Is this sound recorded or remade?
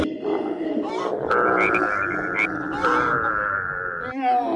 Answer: recorded